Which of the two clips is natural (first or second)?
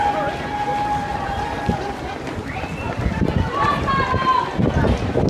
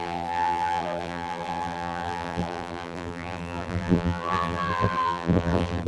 first